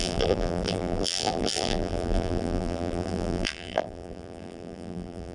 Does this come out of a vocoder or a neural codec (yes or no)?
yes